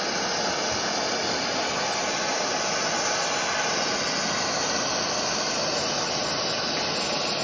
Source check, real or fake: real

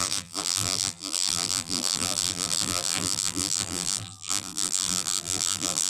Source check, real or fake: fake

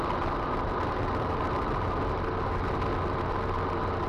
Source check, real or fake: real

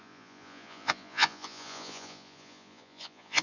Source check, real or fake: fake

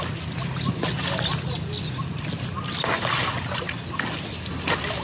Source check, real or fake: real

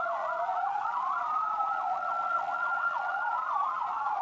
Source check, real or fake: fake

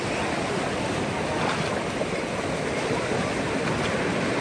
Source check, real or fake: real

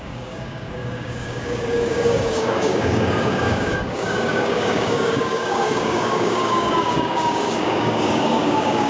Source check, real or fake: fake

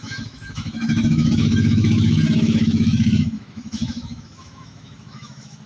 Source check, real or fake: fake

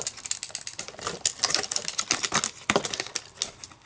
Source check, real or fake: real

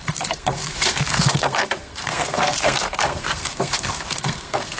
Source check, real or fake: fake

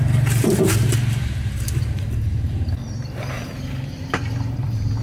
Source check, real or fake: fake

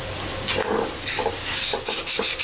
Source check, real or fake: real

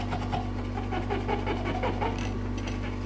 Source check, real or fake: real